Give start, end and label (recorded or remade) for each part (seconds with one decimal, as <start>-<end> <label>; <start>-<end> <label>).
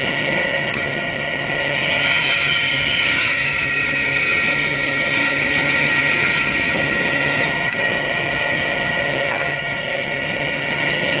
0.0-11.2 remade